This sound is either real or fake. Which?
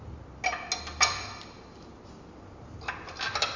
real